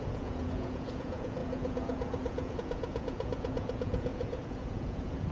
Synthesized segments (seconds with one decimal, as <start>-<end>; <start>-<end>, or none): 0.0-5.3